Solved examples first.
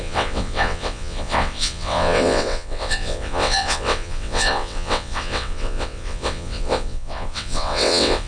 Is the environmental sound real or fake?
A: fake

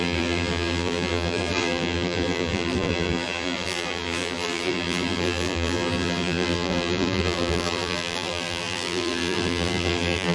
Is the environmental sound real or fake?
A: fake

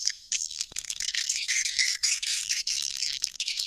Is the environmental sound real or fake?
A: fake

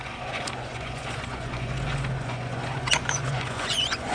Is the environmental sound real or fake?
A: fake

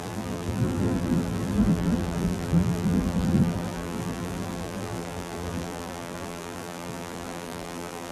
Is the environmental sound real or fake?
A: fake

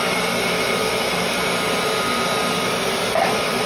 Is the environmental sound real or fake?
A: real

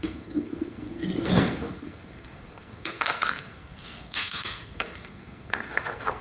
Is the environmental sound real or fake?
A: fake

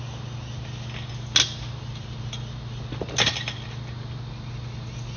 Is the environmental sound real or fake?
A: real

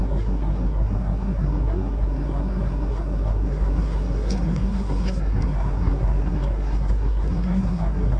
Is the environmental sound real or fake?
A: fake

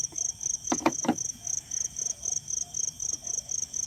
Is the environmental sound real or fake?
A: fake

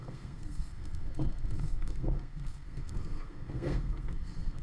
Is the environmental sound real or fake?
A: fake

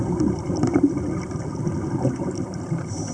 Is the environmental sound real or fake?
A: real